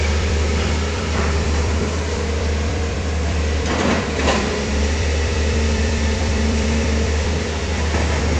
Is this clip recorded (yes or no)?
no